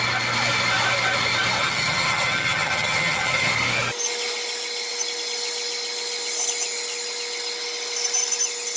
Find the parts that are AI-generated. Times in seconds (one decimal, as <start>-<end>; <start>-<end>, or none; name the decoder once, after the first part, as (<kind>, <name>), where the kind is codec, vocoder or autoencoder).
1.6-3.5 (vocoder, HiFi-GAN)